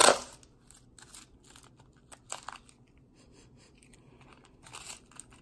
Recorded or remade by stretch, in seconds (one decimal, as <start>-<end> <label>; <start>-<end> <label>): 0.0-3.2 recorded; 3.2-4.7 remade; 4.7-5.4 recorded